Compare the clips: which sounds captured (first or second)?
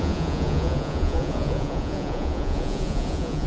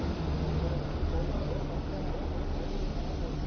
second